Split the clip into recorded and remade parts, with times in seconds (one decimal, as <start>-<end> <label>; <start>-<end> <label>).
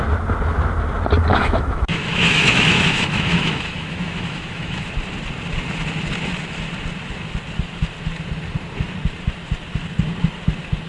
0.0-1.3 recorded; 1.3-4.9 remade; 4.9-10.9 recorded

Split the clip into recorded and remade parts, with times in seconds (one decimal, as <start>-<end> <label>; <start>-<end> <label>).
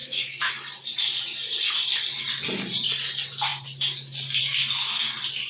0.0-0.5 remade; 0.5-5.5 recorded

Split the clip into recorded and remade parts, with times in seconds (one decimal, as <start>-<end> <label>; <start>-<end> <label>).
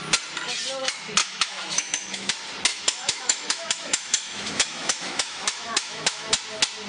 0.0-1.2 recorded; 1.2-2.3 remade; 2.3-2.7 recorded; 2.7-6.3 remade; 6.3-6.9 recorded